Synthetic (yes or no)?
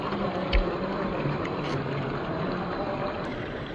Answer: yes